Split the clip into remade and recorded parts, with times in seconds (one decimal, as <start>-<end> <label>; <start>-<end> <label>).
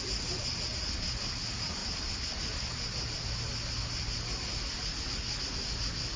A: 0.0-6.2 recorded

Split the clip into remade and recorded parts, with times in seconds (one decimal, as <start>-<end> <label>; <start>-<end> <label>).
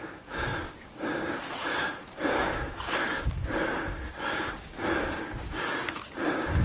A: 0.0-6.6 remade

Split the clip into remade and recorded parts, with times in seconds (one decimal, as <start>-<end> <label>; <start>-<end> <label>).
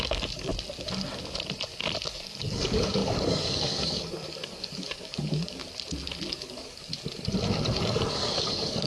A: 0.0-0.5 remade; 0.5-2.1 recorded; 2.1-5.6 remade; 5.6-6.3 recorded; 6.3-6.9 remade; 6.9-7.8 recorded; 7.8-8.9 remade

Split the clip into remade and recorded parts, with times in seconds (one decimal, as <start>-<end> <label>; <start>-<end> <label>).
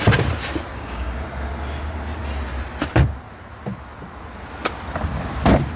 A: 0.0-0.7 recorded; 0.7-1.2 remade; 1.2-5.8 recorded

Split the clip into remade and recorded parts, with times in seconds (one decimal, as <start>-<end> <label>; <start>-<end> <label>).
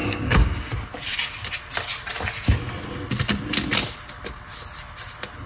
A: 0.0-0.7 remade; 0.7-5.5 recorded